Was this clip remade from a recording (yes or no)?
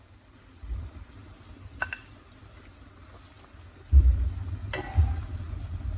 no